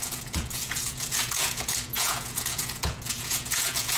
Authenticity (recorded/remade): remade